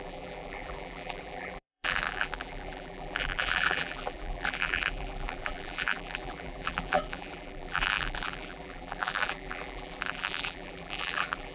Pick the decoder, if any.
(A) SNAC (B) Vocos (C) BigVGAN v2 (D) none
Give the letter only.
C